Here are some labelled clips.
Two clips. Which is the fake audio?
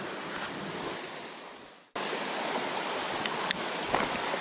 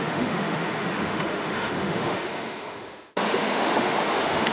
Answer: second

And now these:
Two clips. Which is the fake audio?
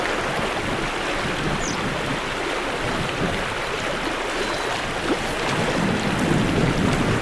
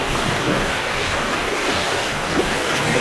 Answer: second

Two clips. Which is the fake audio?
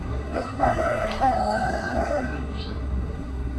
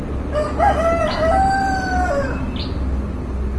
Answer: first